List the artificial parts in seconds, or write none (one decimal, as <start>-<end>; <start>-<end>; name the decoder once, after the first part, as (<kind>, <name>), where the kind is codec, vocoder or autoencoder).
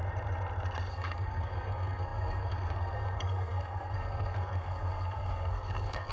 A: 0.9-6.1 (codec, SNAC)